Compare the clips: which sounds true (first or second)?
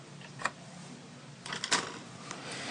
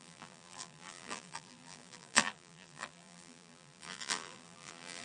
first